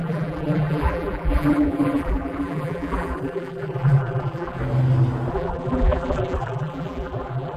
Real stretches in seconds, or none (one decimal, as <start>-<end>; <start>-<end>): 4.6-5.3